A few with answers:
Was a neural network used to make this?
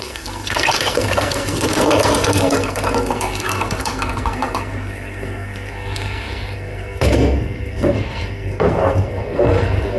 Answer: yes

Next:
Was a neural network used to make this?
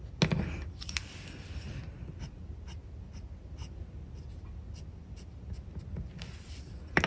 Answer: no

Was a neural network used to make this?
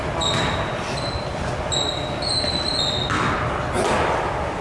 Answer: no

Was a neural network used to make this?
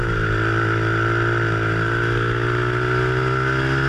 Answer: no